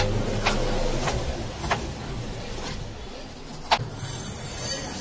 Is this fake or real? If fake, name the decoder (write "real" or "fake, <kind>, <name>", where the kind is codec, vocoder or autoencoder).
real